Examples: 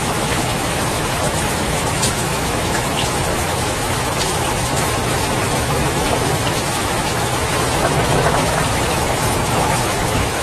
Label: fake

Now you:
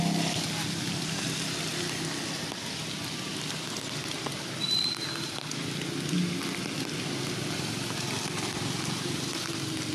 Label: real